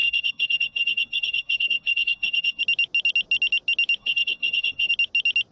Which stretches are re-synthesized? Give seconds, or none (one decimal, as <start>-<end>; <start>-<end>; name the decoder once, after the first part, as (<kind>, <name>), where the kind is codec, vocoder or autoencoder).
0.0-2.6 (codec, SNAC); 4.0-4.9